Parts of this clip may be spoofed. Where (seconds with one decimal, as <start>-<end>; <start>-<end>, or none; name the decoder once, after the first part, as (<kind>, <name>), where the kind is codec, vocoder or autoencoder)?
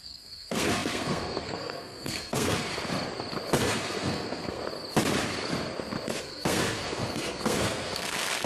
0.0-2.7 (codec, SNAC); 3.6-4.6; 6.2-8.5